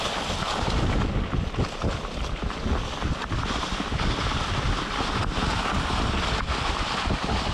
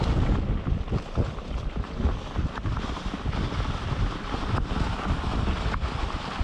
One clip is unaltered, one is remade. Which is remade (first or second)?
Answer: second